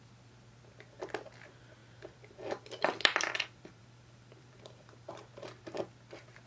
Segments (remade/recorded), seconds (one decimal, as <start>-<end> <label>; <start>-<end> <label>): 0.0-1.8 recorded; 1.8-5.1 remade; 5.1-6.5 recorded